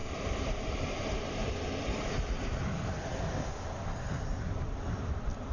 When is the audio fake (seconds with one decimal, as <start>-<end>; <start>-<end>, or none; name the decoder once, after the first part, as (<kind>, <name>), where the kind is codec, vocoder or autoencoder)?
0.0-1.5 (vocoder, BigVGAN v2)

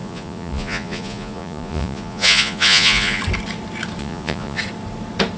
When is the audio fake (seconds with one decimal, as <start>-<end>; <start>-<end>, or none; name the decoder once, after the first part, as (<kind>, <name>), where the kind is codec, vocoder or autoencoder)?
0.0-3.2 (vocoder, Vocos); 4.0-4.6

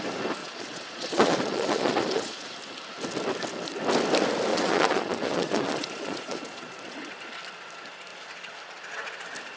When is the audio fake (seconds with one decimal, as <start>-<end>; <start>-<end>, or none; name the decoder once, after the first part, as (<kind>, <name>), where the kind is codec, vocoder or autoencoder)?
0.4-2.5 (vocoder, Vocos); 4.5-7.2

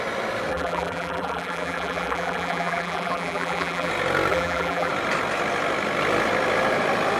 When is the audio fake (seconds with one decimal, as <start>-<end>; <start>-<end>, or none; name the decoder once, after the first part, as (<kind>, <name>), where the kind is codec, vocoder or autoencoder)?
0.5-3.9 (vocoder, BigVGAN v2); 4.3-4.9

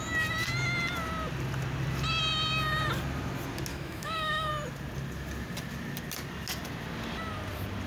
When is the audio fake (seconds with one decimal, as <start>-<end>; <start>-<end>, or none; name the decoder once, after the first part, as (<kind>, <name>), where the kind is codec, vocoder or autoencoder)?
3.7-4.5 (autoencoder, DAC-VAE)

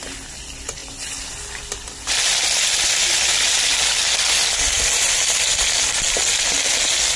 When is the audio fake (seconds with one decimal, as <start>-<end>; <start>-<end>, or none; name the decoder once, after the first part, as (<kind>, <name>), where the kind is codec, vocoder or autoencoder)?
none